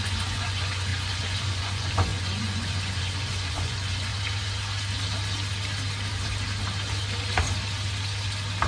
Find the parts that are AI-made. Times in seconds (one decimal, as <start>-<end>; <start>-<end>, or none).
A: 0.0-4.1